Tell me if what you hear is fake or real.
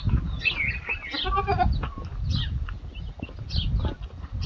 real